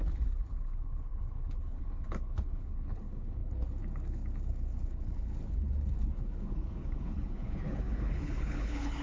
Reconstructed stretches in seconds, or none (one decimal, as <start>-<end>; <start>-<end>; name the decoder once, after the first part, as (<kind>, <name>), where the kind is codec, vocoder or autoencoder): 0.0-9.0 (codec, HILCodec)